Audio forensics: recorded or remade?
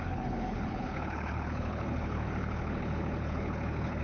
remade